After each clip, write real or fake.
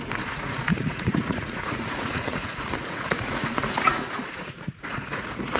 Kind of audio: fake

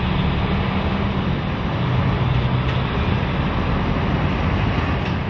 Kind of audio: real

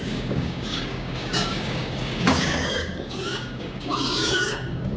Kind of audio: fake